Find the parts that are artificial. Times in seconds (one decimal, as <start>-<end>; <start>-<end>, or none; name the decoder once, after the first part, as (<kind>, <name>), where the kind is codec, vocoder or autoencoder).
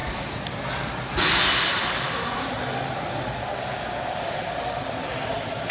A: none